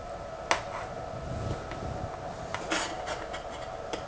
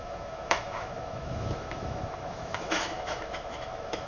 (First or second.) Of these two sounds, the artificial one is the second